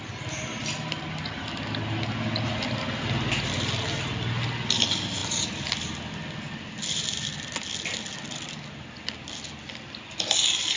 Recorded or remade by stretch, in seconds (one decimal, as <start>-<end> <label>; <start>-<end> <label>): 0.0-10.8 recorded